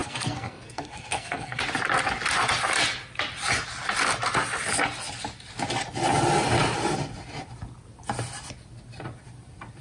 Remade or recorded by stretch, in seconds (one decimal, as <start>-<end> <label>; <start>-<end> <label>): 0.0-1.6 remade; 1.6-9.8 recorded